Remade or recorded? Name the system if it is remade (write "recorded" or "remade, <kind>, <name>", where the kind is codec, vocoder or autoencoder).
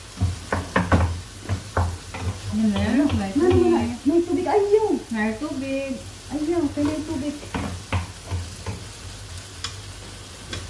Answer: recorded